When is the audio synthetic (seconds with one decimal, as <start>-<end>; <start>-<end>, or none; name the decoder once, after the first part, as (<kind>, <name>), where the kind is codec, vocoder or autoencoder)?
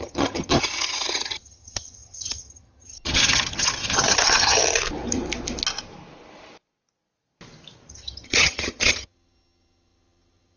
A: 0.0-4.6 (vocoder, HiFi-GAN); 7.9-10.6